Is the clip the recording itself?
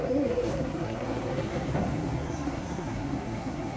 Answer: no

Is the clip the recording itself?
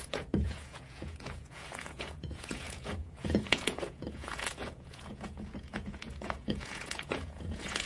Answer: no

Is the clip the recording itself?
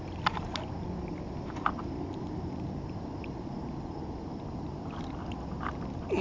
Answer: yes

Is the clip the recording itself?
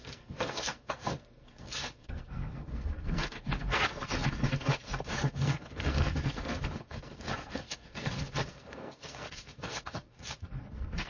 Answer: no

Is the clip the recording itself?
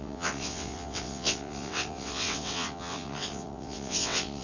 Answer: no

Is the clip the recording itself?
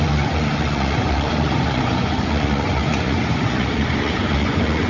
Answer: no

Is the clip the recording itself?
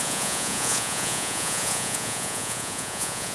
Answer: no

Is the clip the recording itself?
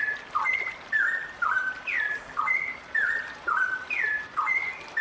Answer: yes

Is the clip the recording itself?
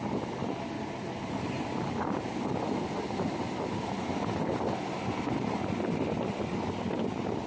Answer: yes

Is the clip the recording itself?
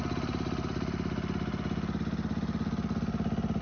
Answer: yes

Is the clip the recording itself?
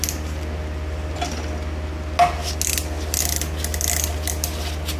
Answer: yes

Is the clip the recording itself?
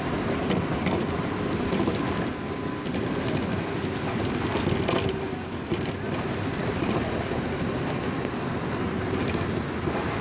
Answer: yes